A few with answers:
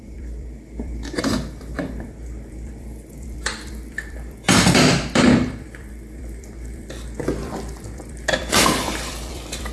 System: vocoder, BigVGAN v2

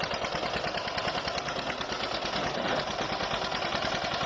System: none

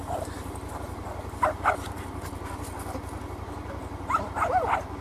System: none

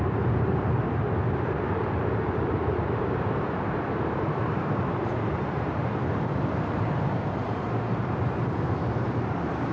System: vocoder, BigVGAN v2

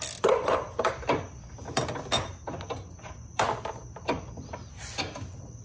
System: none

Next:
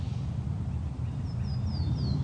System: none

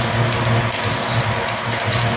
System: none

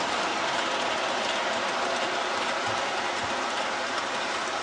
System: vocoder, BigVGAN v2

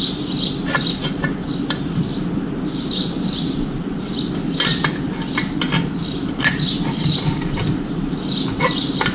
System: none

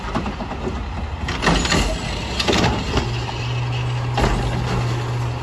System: none